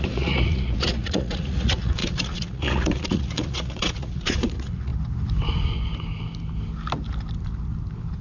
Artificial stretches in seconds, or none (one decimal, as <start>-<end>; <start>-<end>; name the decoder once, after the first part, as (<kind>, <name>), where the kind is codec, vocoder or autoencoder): 0.0-4.9 (vocoder, Vocos)